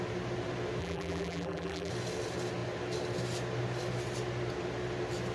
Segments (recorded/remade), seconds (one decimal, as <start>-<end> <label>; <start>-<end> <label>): 0.0-0.8 recorded; 0.8-1.9 remade; 1.9-5.3 recorded